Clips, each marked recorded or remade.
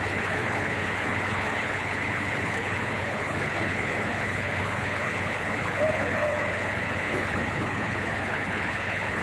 remade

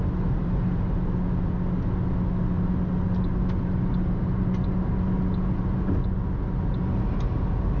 recorded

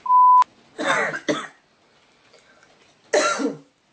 recorded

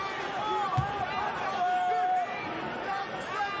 recorded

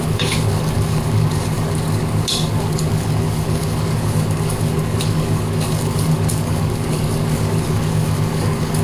remade